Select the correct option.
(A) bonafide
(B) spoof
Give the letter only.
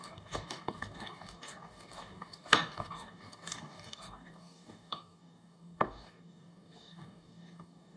B